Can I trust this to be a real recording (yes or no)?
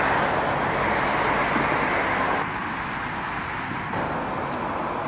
yes